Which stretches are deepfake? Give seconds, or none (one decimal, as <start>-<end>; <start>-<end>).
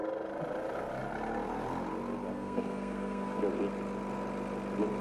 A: 2.3-3.4